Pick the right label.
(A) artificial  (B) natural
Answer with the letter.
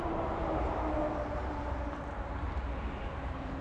A